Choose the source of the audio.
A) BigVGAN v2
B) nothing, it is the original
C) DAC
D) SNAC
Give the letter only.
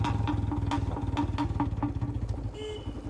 B